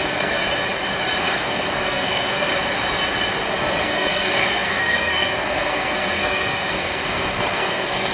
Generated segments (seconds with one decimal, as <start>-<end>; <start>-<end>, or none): 0.0-0.4; 1.2-2.5; 3.8-8.1